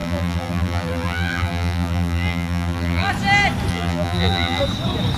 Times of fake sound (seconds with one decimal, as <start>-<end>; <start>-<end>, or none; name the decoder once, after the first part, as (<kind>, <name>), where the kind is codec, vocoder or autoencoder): 0.0-3.1 (vocoder, BigVGAN v2); 3.7-4.6